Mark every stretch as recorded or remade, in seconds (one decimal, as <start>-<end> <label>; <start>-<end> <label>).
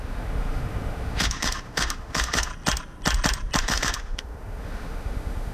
0.0-2.5 remade; 2.5-3.6 recorded; 3.6-5.5 remade